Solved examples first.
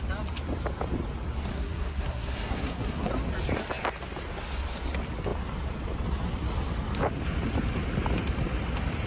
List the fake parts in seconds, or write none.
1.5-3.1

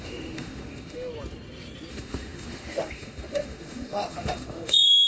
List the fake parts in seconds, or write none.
0.0-1.1; 1.9-5.1

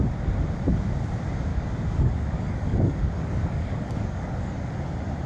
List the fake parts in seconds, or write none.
1.5-4.7

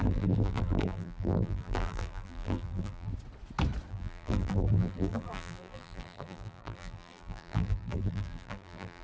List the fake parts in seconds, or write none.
0.0-3.1; 3.9-9.0

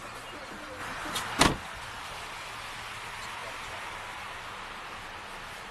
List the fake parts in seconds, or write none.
none